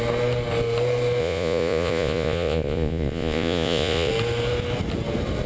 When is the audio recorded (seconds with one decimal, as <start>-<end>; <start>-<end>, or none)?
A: 0.0-1.2; 4.1-5.5